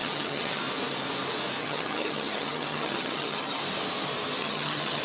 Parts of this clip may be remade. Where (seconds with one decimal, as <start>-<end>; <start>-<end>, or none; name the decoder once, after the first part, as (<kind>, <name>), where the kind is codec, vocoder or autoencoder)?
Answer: 0.0-0.6 (vocoder, HiFi-GAN); 1.6-3.6; 4.4-5.0